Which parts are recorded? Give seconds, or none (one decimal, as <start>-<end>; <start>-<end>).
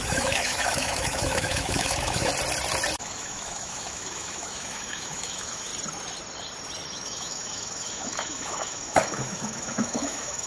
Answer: 2.3-3.0; 5.7-6.9